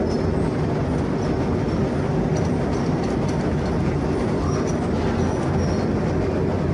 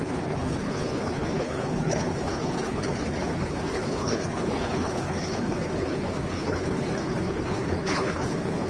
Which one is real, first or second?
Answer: first